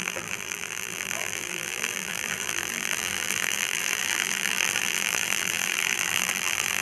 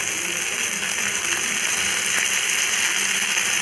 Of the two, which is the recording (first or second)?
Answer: second